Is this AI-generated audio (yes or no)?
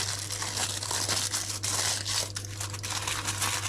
no